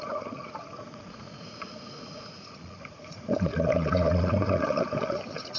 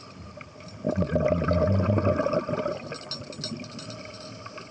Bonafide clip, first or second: second